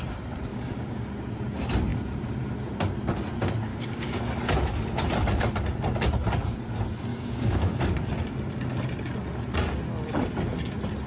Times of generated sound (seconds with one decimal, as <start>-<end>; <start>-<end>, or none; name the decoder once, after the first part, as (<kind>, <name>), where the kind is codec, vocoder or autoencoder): 0.5-1.1 (codec, DAC); 3.7-4.2; 7.1-7.8